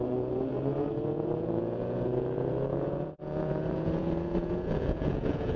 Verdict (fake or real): fake